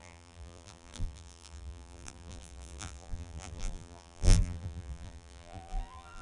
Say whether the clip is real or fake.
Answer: fake